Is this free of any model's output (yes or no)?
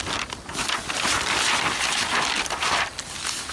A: yes